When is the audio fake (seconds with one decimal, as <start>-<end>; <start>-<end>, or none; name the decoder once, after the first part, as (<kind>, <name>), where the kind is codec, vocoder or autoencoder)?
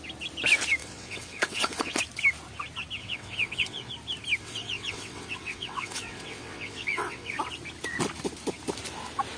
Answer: 0.8-2.0 (vocoder, WaveNeXt); 3.0-3.9; 4.4-7.4